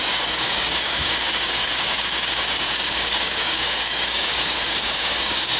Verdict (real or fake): fake